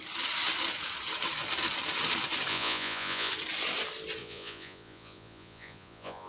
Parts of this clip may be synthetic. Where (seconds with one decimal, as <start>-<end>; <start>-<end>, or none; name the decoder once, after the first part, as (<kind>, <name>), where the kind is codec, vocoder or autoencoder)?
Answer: 2.5-3.3 (vocoder, Vocos); 4.2-6.3